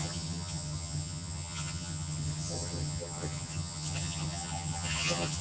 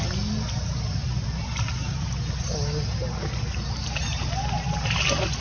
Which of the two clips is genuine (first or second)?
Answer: second